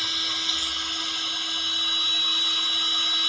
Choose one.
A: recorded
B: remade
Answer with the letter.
A